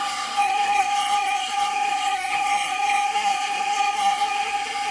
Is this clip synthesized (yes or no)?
yes